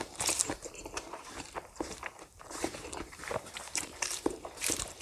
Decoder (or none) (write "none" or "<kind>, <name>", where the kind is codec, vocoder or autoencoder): vocoder, BigVGAN v2